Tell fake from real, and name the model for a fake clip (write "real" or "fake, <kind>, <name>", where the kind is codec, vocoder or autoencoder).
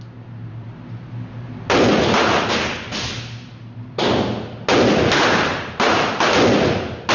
real